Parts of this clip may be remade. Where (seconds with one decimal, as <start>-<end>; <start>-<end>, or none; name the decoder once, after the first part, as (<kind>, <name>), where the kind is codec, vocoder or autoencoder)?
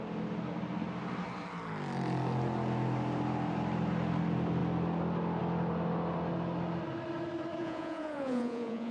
7.6-8.9 (vocoder, Vocos)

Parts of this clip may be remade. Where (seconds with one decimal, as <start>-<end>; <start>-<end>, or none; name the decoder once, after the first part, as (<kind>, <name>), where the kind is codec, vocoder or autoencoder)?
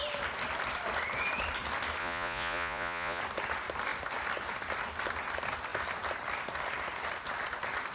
2.0-3.2 (vocoder, Vocos)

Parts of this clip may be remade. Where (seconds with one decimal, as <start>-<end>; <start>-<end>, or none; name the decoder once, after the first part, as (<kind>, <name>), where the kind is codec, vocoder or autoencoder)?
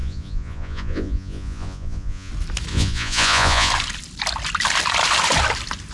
0.0-2.3 (vocoder, Vocos); 2.7-3.7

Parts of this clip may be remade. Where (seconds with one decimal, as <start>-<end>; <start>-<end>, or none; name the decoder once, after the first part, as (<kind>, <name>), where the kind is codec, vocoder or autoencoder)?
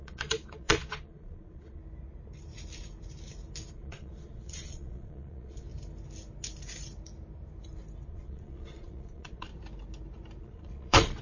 0.0-1.8 (vocoder, Vocos); 3.7-5.7; 8.1-9.5; 10.4-11.2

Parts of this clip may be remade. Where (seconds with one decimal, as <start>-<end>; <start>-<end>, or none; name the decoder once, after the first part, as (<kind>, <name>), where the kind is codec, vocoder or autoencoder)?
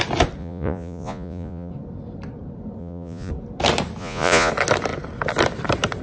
0.4-1.7 (vocoder, Vocos); 2.8-3.3; 4.0-4.5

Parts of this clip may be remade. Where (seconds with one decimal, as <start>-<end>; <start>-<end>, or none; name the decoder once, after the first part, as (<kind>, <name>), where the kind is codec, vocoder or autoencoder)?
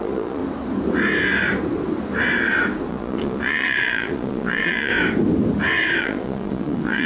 0.0-0.4 (vocoder, Vocos); 2.9-4.9; 6.0-7.1